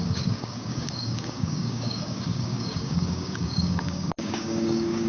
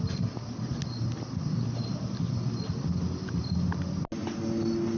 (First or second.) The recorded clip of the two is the second